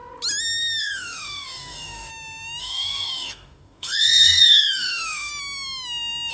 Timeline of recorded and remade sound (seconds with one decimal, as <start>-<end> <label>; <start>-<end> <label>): 0.0-0.8 recorded; 0.8-2.1 remade; 2.1-2.6 recorded; 2.6-5.3 remade; 5.3-6.3 recorded